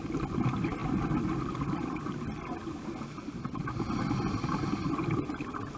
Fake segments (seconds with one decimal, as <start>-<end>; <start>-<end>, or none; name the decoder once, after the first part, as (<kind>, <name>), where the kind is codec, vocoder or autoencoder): none